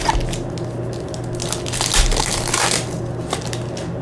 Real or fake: real